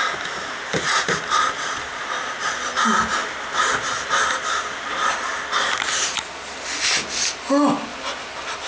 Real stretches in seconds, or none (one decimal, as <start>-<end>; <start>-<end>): 0.0-8.7